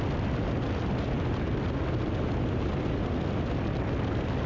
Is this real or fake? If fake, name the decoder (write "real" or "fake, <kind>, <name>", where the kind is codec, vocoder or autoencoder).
real